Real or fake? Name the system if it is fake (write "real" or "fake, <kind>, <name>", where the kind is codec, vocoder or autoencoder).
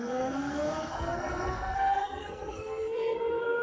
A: fake, codec, SNAC